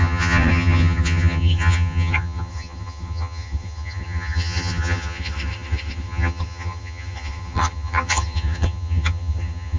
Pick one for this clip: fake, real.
fake